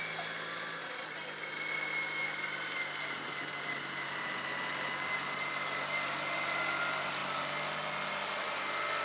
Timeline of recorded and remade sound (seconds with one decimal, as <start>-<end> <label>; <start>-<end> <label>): 0.0-9.0 recorded